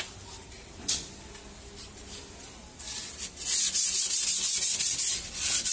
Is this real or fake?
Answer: real